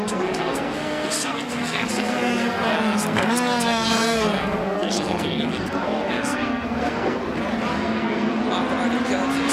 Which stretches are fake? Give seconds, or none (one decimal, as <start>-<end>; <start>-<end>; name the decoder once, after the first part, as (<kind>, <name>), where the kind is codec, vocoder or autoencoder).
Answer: 0.0-7.2 (codec, SNAC); 7.7-8.4